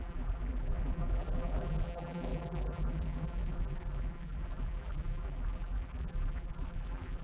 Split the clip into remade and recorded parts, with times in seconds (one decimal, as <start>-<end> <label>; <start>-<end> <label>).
0.0-7.2 remade